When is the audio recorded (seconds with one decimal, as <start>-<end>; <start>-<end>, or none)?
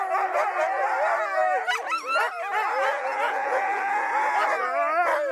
0.0-2.9; 3.9-5.3